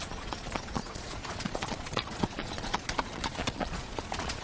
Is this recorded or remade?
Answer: remade